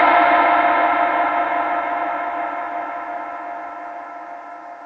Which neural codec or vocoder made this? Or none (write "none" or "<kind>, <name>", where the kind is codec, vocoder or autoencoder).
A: none